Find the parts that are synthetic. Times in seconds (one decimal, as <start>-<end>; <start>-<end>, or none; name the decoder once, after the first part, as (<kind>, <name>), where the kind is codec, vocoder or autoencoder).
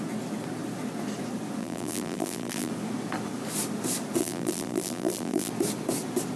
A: 1.6-2.7 (vocoder, BigVGAN v2); 4.2-5.5